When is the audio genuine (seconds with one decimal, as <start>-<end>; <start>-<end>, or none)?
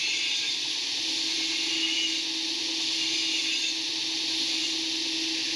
0.0-5.6